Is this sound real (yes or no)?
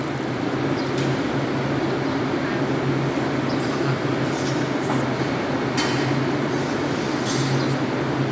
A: yes